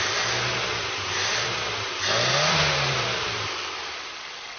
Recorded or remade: remade